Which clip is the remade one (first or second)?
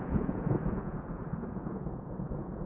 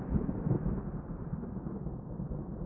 first